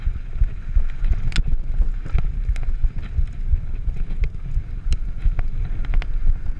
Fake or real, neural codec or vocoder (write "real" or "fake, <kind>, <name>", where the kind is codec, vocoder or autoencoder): real